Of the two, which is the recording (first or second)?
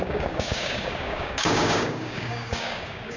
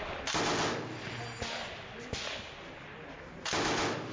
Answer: second